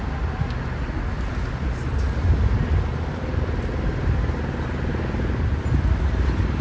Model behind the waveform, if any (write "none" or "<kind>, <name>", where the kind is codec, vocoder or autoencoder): none